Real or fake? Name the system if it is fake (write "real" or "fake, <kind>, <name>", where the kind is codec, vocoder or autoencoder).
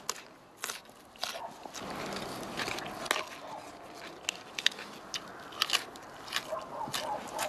real